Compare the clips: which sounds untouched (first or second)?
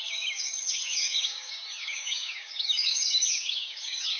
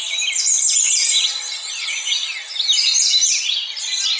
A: second